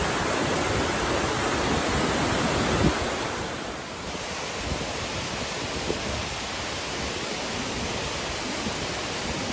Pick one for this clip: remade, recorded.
recorded